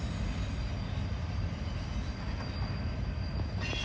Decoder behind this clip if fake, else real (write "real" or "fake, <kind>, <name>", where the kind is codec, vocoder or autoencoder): real